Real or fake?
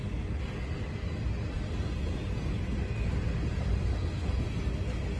real